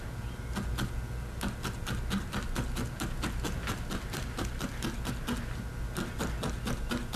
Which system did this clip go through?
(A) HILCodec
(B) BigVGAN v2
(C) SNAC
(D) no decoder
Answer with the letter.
D